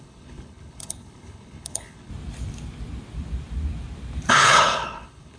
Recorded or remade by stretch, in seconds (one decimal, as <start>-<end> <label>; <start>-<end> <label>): 0.0-2.1 remade; 2.1-4.3 recorded; 4.3-5.4 remade